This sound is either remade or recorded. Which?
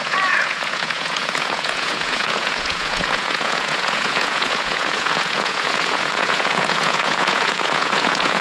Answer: remade